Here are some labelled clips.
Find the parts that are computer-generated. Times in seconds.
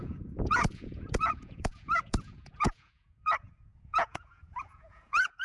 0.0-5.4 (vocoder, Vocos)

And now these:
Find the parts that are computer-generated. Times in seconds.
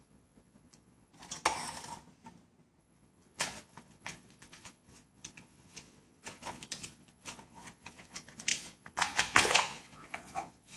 0.0-1.1 (vocoder, Vocos); 2.8-10.8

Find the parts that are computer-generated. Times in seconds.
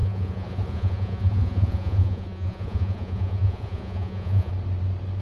0.0-4.5 (vocoder, Vocos)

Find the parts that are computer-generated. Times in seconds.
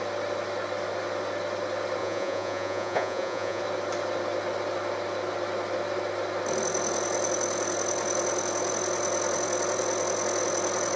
2.0-3.6 (vocoder, Vocos)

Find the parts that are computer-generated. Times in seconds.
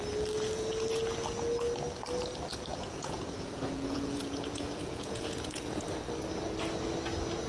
2.7-5.8 (vocoder, Vocos)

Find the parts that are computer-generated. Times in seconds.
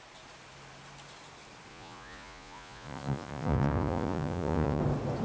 1.7-4.8 (vocoder, Vocos)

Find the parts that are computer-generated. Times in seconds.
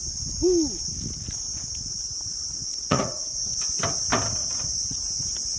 2.7-3.2 (vocoder, Vocos); 4.4-5.6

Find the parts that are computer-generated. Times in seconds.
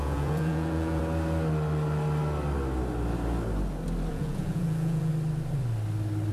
0.0-1.0 (vocoder, Vocos); 4.1-5.1